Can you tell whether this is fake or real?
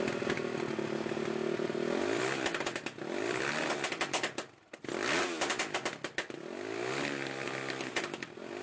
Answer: real